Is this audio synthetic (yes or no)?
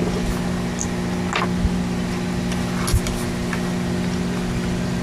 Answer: no